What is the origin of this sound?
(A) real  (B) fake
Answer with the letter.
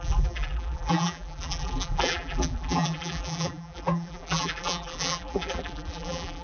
B